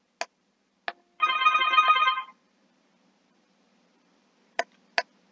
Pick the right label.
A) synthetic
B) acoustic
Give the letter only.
B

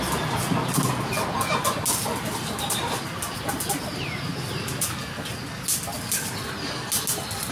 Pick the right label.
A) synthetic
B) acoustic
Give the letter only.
B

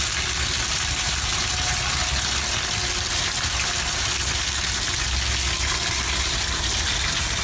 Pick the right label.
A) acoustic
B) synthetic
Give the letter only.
A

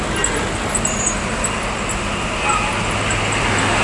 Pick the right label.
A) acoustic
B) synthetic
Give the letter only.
A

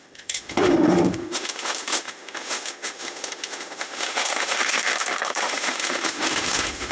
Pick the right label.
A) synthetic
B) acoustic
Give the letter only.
A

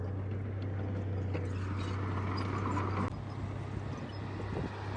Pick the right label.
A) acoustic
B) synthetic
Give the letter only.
A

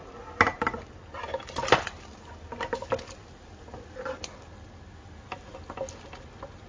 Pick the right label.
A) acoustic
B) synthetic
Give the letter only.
A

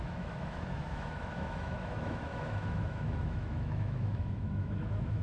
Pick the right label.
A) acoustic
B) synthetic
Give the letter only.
B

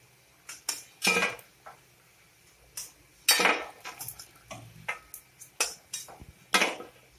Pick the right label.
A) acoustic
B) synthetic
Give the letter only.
A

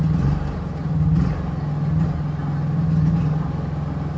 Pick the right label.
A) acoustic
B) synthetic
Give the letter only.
A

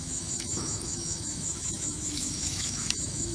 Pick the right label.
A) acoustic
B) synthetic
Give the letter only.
B